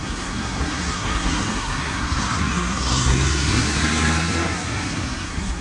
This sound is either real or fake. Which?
fake